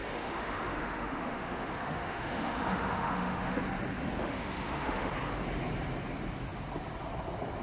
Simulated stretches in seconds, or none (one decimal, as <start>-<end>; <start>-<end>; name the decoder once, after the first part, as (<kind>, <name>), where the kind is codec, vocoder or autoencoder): 0.0-3.6 (autoencoder, DAC-VAE); 4.2-5.1